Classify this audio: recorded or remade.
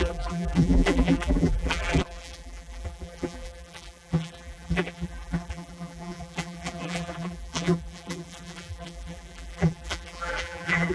remade